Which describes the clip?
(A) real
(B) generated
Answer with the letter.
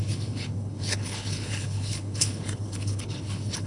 B